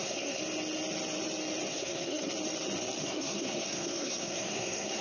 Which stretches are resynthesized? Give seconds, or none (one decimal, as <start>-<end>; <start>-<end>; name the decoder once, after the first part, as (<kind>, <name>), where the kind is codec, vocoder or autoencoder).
0.0-0.4 (codec, SNAC); 1.7-2.3; 3.0-5.0